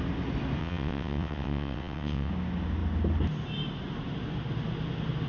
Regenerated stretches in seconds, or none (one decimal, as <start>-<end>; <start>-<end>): 0.6-2.3